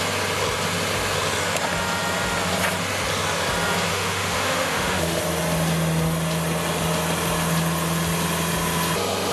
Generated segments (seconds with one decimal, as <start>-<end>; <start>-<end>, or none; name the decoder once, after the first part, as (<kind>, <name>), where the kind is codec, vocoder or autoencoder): 3.9-5.2 (autoencoder, DAC-VAE)